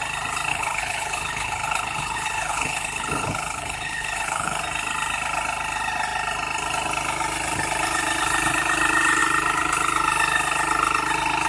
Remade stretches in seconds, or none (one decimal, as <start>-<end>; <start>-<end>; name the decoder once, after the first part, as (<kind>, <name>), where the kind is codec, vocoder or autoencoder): 0.5-4.6 (codec, HILCodec)